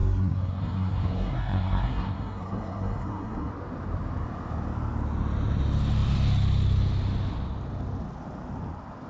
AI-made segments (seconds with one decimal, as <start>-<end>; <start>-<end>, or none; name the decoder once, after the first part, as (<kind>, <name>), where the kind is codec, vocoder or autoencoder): 0.0-3.5 (codec, SNAC)